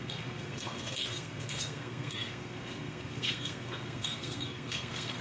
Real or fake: fake